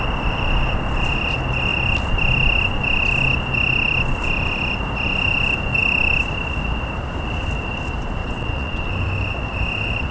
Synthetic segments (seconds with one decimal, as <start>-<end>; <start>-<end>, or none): 8.2-8.8